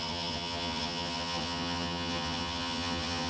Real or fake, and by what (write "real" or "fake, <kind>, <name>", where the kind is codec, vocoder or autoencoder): fake, vocoder, HiFi-GAN